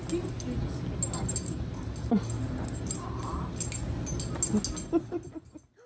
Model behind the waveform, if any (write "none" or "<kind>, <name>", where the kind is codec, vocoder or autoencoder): none